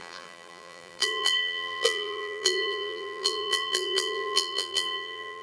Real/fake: fake